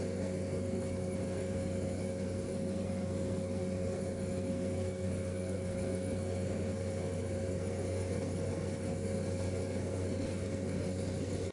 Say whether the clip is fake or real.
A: fake